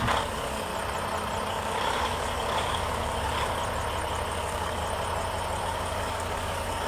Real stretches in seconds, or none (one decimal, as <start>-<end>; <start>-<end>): 0.7-1.5; 3.6-4.3; 4.8-5.6